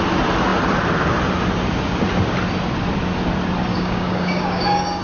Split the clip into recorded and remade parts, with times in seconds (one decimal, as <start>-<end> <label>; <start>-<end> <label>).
0.0-3.7 recorded; 3.7-5.0 remade